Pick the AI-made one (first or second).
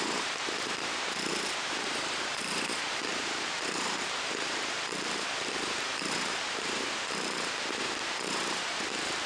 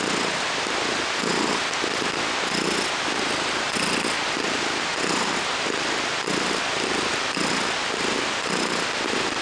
first